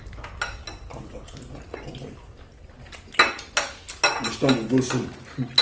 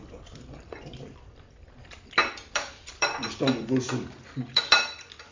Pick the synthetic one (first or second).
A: second